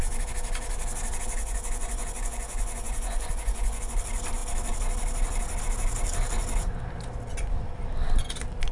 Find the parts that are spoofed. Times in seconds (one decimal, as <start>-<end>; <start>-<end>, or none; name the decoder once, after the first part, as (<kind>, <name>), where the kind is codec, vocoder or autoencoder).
1.4-4.0 (vocoder, Vocos)